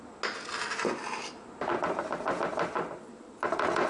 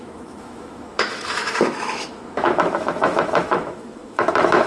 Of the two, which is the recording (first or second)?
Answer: first